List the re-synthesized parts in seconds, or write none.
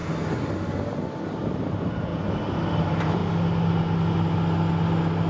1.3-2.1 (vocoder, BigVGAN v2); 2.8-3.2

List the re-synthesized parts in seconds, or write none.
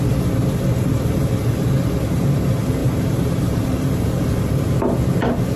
2.8-4.7 (vocoder, BigVGAN v2)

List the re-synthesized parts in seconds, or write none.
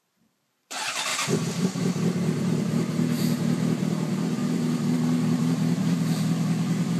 0.0-1.1 (vocoder, BigVGAN v2); 1.6-7.0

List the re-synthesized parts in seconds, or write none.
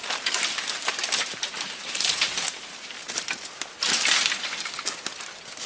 0.0-2.2 (vocoder, BigVGAN v2); 3.0-3.5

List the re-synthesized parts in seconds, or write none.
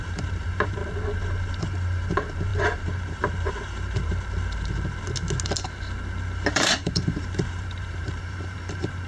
0.0-0.8 (vocoder, BigVGAN v2); 1.6-4.1; 6.5-9.1